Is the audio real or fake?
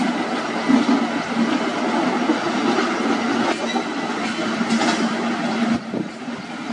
real